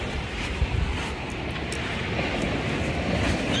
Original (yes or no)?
yes